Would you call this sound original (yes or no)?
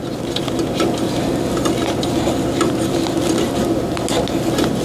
yes